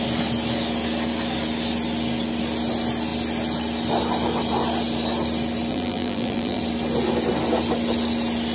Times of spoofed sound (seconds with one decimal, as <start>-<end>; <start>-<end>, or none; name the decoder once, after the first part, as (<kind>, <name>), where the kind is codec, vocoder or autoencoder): 5.7-6.6 (vocoder, BigVGAN v2)